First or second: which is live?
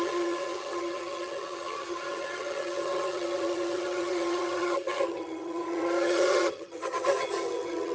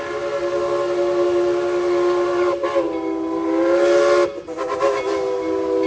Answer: second